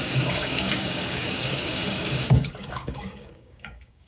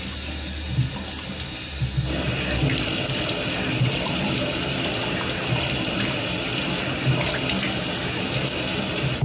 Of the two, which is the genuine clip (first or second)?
second